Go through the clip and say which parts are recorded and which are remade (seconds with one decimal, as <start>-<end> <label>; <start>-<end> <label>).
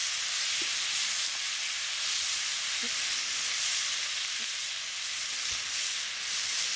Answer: 0.0-6.8 recorded